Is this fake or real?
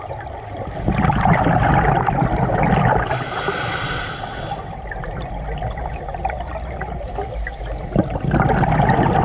real